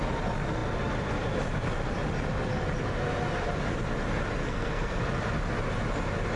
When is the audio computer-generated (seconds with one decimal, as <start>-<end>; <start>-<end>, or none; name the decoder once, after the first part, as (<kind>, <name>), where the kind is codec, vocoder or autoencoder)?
4.4-5.0 (codec, SNAC)